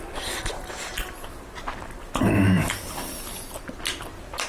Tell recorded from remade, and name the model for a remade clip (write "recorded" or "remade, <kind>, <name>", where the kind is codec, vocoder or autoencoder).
recorded